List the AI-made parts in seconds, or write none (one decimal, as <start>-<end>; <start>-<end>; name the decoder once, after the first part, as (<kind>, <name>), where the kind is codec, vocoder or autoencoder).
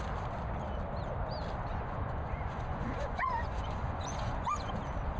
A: 1.7-4.8 (vocoder, Vocos)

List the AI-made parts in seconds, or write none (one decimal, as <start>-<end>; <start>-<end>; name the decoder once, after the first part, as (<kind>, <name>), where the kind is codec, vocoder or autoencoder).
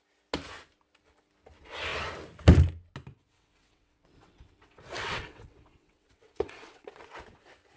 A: 3.1-7.1 (vocoder, WaveNeXt)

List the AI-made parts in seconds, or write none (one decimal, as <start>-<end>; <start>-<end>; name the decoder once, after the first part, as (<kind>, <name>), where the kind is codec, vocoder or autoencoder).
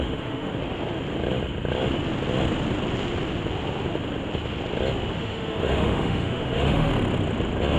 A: 0.0-0.5 (autoencoder, DAC-VAE); 5.2-6.9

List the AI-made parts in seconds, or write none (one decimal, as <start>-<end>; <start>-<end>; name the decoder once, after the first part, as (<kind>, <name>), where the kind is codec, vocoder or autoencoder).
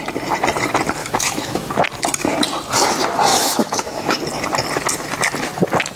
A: 1.0-1.7 (autoencoder, DAC-VAE); 3.3-4.2